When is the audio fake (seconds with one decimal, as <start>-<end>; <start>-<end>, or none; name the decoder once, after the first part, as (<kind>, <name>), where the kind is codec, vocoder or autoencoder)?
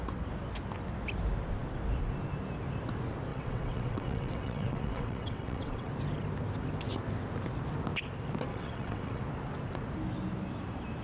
3.3-5.9 (vocoder, WaveNeXt); 8.5-9.2